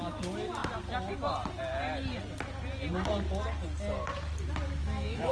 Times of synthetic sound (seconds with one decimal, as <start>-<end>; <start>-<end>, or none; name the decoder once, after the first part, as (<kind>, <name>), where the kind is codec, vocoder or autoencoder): 4.8-5.3 (autoencoder, DAC-VAE)